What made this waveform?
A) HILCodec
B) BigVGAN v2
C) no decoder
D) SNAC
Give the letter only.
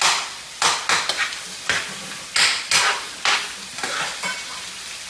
C